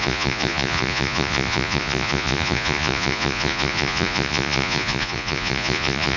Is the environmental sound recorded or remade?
remade